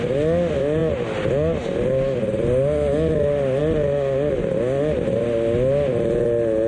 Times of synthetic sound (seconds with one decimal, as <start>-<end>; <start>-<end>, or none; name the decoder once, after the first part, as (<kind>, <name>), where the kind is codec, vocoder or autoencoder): none